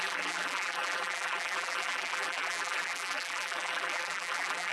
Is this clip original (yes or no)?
no